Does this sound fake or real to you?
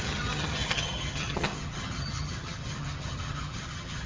fake